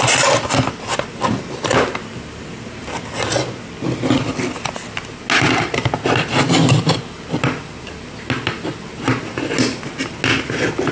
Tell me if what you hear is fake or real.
real